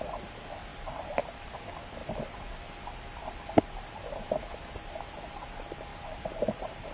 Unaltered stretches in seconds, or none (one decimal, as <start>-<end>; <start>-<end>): 0.0-0.7; 1.5-5.9